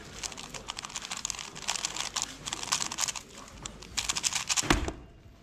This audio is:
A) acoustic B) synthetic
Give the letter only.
A